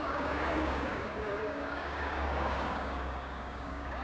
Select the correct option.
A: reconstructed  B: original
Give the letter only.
A